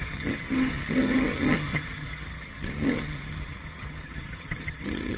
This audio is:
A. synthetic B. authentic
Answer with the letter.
A